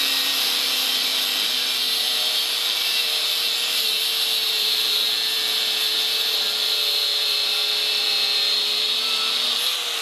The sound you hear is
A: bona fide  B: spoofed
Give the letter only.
B